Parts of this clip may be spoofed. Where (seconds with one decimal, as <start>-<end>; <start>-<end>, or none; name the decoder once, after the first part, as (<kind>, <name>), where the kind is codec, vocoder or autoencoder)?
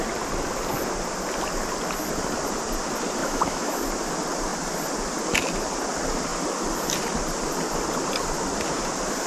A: 3.2-3.7 (autoencoder, DAC-VAE)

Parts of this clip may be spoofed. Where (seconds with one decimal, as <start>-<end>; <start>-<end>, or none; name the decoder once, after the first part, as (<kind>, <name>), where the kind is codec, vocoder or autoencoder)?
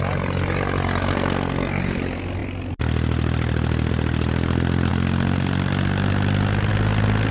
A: 1.1-1.8 (codec, SNAC)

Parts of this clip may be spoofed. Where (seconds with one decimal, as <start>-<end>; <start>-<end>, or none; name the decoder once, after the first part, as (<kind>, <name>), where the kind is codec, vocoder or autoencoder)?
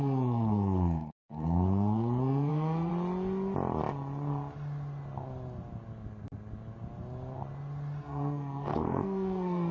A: 0.0-2.9 (codec, SNAC); 8.0-9.7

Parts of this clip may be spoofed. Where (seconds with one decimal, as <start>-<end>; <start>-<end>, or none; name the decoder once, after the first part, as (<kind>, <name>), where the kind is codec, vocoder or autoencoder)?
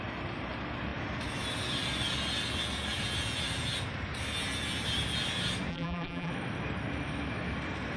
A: 5.7-6.3 (vocoder, BigVGAN v2)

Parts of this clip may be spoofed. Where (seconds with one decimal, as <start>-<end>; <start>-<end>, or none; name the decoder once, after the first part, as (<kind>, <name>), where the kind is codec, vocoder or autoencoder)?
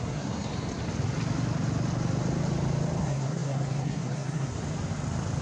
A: 0.0-0.5 (codec, SNAC); 3.0-4.6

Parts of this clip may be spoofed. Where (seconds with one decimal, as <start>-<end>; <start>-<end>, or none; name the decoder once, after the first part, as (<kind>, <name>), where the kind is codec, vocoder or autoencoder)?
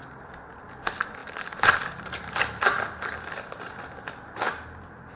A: none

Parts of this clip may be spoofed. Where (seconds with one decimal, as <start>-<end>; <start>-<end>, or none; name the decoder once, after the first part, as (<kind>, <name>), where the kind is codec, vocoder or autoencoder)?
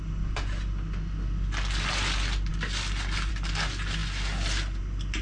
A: none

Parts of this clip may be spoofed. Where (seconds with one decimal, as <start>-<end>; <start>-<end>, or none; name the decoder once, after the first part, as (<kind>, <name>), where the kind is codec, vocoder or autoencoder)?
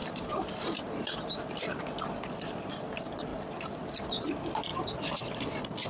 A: 0.0-1.8 (vocoder, BigVGAN v2)